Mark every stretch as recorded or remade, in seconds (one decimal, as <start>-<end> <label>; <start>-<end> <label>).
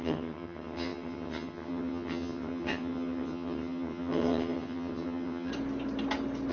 0.0-5.5 remade; 5.5-6.5 recorded